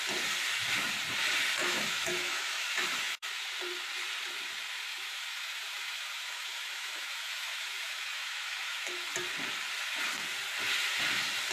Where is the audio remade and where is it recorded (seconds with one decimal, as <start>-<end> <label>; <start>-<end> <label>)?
0.0-1.6 recorded; 1.6-3.4 remade; 3.4-4.9 recorded; 4.9-9.1 remade; 9.1-11.5 recorded